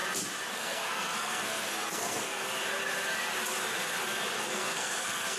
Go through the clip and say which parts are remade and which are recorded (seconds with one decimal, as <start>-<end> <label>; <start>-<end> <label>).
0.0-0.5 recorded; 0.5-2.4 remade; 2.4-4.4 recorded; 4.4-5.4 remade